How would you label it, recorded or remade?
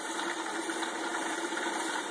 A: remade